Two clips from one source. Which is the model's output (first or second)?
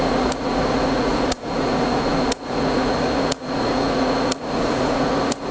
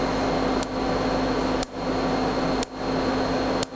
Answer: first